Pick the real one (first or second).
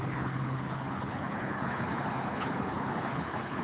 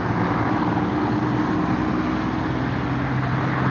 second